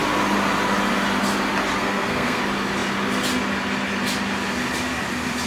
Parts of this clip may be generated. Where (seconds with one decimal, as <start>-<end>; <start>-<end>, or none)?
1.8-2.4

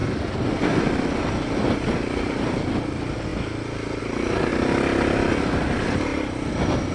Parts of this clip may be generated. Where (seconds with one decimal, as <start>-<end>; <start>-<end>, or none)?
none

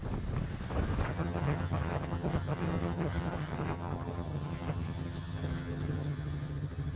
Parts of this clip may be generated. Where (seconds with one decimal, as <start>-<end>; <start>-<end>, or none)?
1.1-7.0

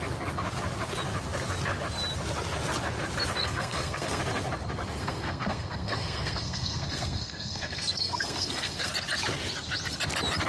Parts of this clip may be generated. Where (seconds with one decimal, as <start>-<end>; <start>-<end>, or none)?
3.4-4.2; 5.0-8.9

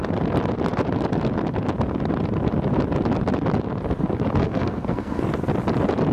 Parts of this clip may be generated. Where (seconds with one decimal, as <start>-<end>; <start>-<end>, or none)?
4.4-5.2